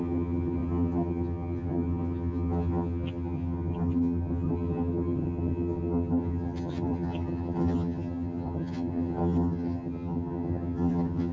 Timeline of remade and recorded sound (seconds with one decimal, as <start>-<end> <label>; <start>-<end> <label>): 0.0-11.3 remade